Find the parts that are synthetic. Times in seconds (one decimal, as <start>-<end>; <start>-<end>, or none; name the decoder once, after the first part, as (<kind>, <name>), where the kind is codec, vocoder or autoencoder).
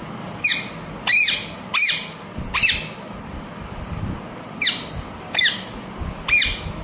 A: none